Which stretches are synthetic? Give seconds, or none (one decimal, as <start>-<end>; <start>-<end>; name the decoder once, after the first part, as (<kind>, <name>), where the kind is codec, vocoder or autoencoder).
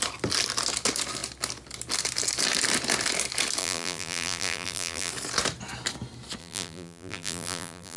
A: 3.6-5.1 (vocoder, BigVGAN v2); 6.4-8.0